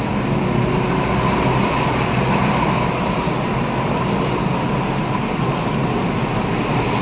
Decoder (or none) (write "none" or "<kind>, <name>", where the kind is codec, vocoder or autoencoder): none